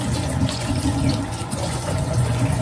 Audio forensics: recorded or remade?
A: remade